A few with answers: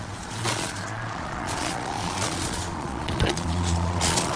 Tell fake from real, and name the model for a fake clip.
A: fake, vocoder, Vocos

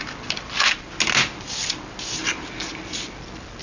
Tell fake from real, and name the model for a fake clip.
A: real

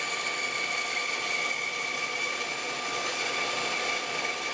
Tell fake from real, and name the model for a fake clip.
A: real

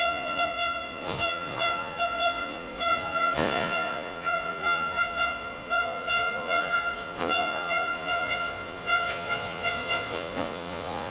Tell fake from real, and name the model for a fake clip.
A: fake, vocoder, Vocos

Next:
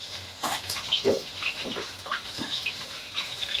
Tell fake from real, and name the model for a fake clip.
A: fake, autoencoder, DAC-VAE